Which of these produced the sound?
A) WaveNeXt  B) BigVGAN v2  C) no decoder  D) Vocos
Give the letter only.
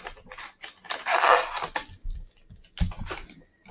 C